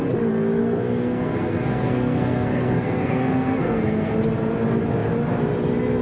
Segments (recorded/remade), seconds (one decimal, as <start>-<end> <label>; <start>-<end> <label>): 0.0-0.6 recorded; 0.6-4.2 remade; 4.2-6.0 recorded